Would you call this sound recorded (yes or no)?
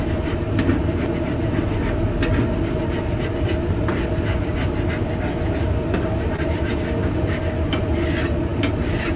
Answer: yes